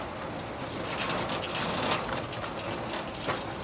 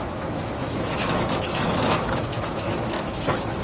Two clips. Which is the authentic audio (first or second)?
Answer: first